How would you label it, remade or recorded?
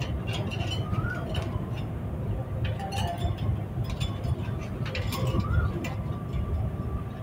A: recorded